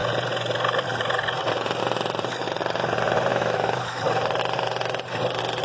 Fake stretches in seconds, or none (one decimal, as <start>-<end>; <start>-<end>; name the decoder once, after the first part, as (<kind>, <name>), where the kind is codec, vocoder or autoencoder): 3.3-4.0 (autoencoder, DAC-VAE)